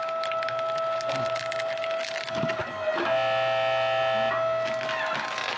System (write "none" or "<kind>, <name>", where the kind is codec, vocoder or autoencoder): none